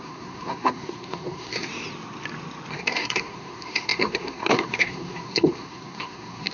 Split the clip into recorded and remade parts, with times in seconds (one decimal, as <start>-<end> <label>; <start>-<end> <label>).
0.0-1.7 remade; 1.7-2.7 recorded; 2.7-6.5 remade